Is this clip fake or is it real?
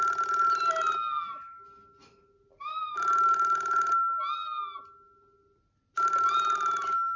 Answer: real